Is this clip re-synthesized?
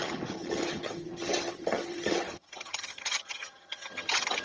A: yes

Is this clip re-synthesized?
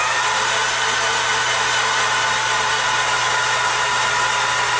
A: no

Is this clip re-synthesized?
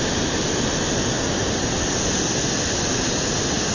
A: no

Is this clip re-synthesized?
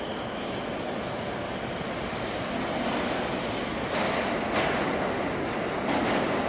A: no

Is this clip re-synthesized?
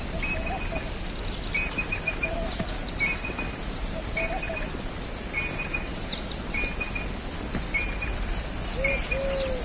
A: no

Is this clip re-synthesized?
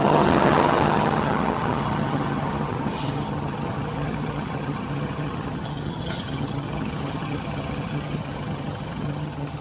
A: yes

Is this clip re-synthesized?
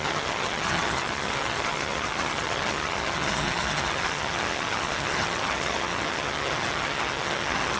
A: yes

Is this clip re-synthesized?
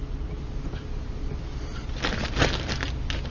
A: no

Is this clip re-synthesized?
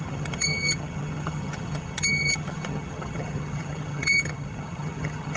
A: yes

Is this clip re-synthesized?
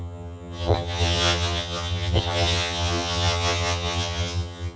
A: yes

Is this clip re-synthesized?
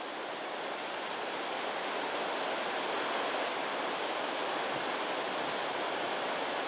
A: no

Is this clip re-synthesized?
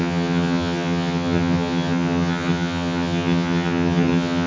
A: yes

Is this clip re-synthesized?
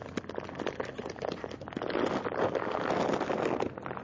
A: no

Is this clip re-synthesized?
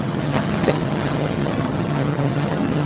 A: yes